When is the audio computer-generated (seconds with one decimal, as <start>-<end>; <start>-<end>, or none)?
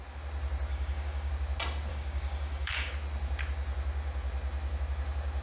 0.7-1.3; 1.9-2.9